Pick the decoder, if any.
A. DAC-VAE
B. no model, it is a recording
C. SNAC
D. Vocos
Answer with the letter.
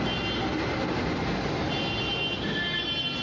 B